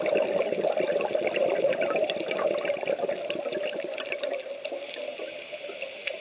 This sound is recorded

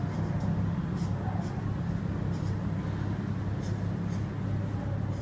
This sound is recorded